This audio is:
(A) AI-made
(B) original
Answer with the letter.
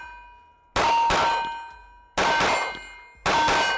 B